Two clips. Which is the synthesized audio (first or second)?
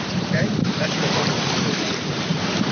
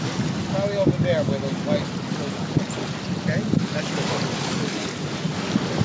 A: first